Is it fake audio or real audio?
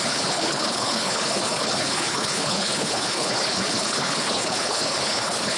fake